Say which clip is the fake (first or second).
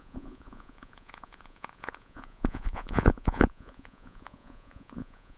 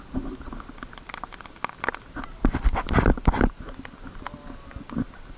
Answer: first